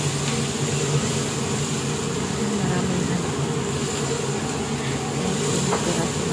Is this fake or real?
real